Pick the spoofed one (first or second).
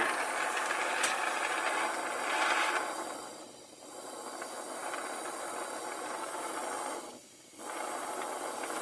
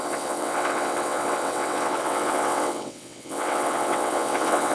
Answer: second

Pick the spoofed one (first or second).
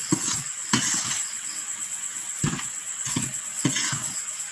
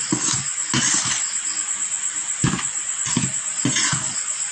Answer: first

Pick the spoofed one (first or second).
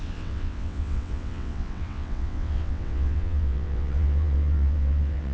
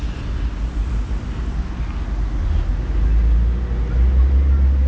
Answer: first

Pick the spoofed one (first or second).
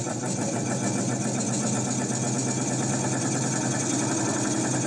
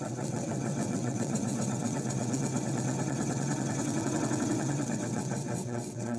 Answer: second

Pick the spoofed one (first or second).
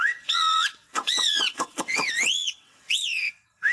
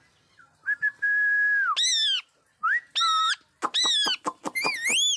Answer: first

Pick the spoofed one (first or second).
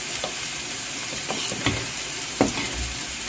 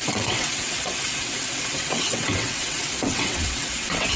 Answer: second